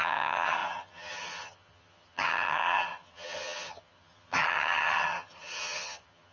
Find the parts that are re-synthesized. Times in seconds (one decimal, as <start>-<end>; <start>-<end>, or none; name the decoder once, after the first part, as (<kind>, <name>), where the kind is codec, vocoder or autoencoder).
0.0-6.3 (vocoder, HiFi-GAN)